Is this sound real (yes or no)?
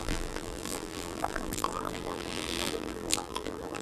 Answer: no